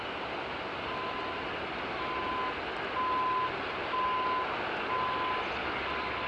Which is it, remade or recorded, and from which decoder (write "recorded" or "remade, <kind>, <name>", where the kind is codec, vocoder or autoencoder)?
recorded